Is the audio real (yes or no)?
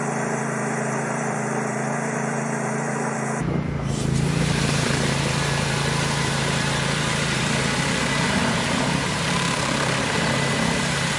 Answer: no